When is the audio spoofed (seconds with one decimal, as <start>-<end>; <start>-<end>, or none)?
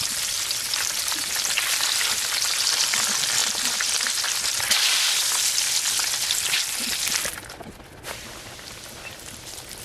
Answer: none